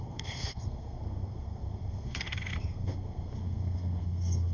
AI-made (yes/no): yes